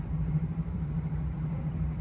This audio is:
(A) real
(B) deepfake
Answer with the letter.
B